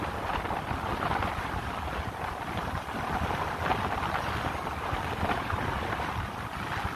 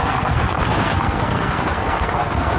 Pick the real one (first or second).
first